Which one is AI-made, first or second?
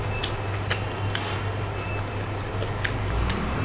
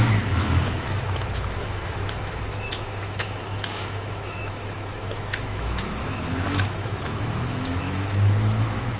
second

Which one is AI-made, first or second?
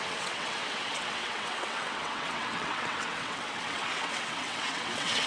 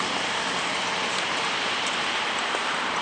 first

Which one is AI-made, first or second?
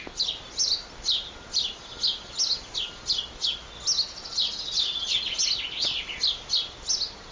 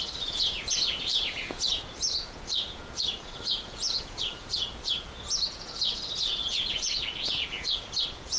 second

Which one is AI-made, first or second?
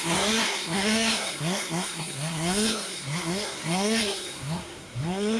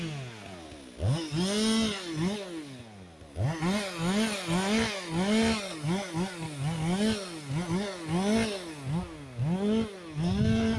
first